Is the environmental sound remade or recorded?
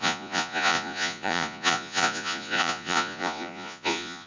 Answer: remade